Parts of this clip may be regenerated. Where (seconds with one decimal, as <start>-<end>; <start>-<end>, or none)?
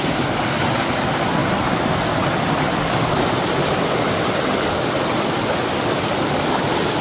none